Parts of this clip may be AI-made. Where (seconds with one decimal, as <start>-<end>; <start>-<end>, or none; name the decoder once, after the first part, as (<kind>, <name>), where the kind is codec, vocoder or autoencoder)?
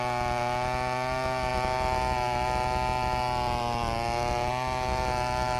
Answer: none